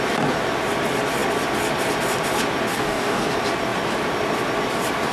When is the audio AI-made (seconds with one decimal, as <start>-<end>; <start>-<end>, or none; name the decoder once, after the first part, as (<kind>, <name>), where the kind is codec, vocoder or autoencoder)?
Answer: 2.7-3.3 (codec, DAC)